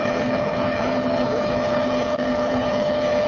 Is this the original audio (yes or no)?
no